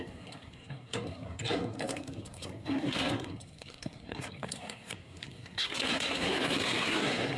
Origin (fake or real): fake